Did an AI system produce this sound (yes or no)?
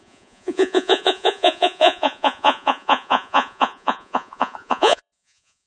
yes